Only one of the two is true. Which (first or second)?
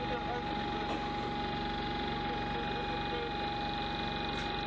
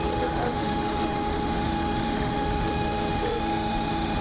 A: first